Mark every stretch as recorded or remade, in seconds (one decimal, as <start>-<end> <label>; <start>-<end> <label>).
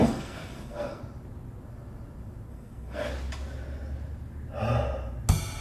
0.0-1.0 remade; 1.0-2.5 recorded; 2.5-3.1 remade; 3.1-5.6 recorded